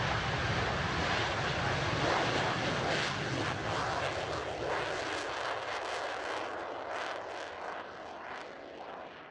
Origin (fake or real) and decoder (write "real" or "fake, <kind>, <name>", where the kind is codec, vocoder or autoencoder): real